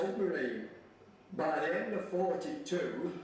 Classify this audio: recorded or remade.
recorded